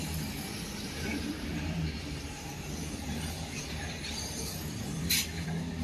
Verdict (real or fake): fake